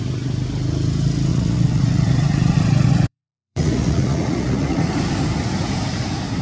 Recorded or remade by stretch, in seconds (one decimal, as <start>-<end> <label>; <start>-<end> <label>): 0.0-1.3 recorded; 1.3-4.9 remade; 4.9-6.4 recorded